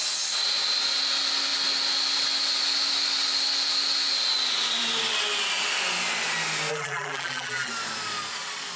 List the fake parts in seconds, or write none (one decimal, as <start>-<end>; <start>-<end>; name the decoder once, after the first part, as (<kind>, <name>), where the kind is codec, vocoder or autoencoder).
6.7-7.7 (vocoder, BigVGAN v2)